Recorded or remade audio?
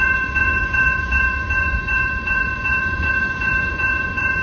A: remade